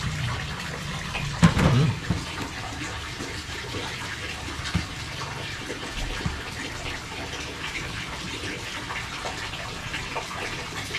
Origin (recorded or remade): recorded